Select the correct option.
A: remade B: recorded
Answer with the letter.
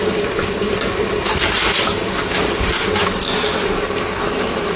B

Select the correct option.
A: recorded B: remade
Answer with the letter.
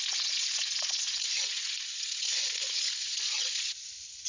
B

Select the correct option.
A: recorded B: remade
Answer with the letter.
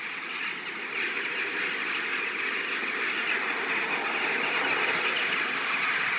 A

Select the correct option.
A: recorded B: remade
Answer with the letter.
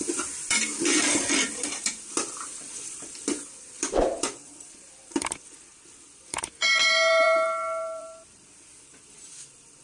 B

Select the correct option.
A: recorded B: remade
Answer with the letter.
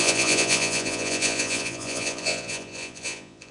B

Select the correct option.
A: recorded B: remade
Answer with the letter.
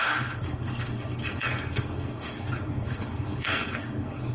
B